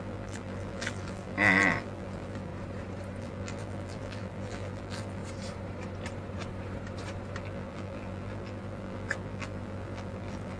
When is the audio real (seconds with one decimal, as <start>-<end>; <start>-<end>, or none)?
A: 2.5-3.2; 5.2-7.4